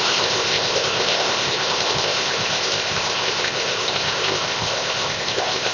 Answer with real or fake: fake